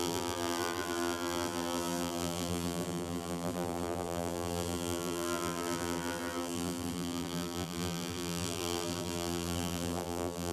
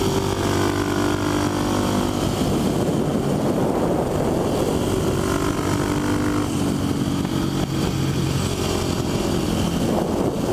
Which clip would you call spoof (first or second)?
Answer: first